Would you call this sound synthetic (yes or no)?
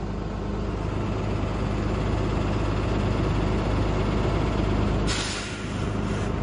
no